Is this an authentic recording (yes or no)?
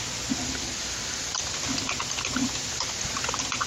yes